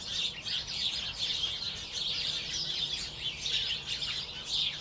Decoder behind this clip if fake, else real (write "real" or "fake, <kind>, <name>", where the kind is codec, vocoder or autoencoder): real